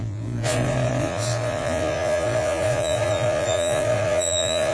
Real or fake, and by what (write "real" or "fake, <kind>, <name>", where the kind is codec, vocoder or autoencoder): fake, vocoder, Vocos